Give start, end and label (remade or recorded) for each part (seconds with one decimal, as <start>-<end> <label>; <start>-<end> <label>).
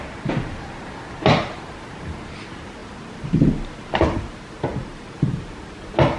0.0-4.7 recorded; 4.7-5.8 remade; 5.8-6.2 recorded